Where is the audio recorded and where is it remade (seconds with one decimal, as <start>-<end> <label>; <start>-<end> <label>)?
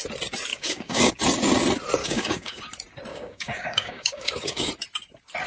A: 0.0-0.5 recorded; 0.5-1.1 remade; 1.1-2.0 recorded; 2.0-2.6 remade; 2.6-3.1 recorded; 3.1-4.7 remade; 4.7-5.5 recorded